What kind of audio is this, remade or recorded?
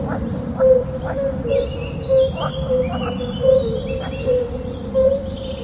remade